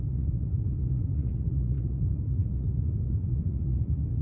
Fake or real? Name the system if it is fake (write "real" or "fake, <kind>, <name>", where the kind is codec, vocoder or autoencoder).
fake, vocoder, Vocos